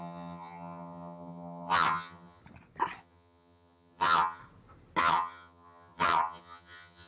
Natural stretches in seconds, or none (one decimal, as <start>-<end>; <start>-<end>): 2.4-3.0; 4.4-5.0